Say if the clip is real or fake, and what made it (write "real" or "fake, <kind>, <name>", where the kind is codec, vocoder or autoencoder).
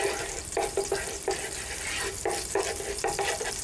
fake, vocoder, BigVGAN v2